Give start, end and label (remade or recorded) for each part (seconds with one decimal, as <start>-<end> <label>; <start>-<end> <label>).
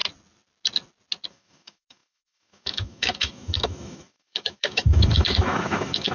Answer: 0.0-1.3 recorded; 1.3-6.1 remade